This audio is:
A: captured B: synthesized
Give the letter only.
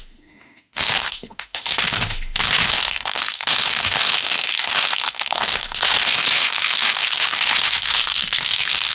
B